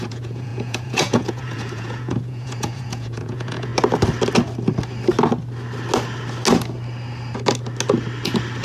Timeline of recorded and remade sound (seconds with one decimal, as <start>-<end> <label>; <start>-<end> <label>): 0.0-3.7 remade; 3.7-8.6 recorded